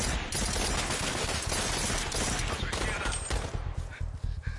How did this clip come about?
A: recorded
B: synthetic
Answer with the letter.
A